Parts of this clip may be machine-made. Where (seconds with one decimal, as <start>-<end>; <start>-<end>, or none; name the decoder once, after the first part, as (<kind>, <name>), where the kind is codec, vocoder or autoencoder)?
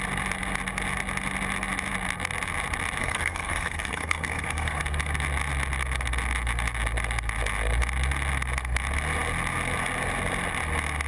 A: 3.0-4.8 (codec, SNAC)